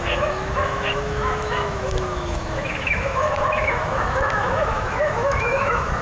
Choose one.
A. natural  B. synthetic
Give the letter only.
B